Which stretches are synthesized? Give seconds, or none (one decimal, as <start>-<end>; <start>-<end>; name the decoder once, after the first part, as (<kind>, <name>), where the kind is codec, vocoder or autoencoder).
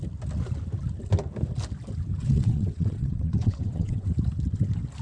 2.2-4.1 (vocoder, WaveNeXt)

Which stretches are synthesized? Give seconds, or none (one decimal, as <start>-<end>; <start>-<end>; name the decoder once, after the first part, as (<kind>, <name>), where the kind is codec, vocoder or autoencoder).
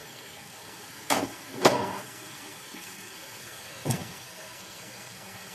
0.0-5.5 (codec, SNAC)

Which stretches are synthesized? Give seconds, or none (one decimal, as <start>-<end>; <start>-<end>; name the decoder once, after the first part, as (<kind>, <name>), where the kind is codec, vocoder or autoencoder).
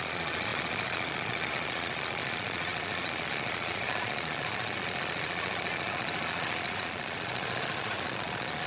0.0-8.7 (vocoder, Vocos)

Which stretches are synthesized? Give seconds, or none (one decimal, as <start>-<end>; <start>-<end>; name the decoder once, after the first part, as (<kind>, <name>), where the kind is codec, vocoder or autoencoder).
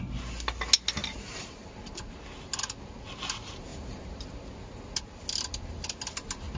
1.0-2.1 (vocoder, BigVGAN v2); 3.7-4.3